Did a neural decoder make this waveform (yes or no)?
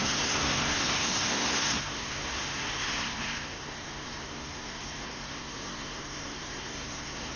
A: yes